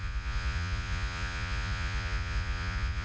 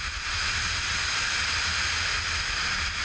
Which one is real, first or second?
second